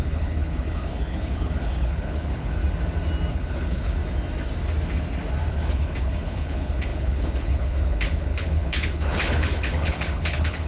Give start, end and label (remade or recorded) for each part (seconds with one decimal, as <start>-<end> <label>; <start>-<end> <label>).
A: 0.0-2.6 remade; 2.6-3.3 recorded; 3.3-4.0 remade; 4.0-5.5 recorded; 5.5-10.7 remade